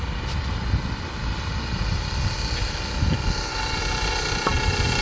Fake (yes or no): no